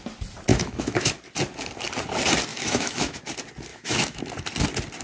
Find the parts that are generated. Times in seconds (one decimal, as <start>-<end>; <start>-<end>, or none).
0.5-1.1; 2.5-3.2; 3.7-4.2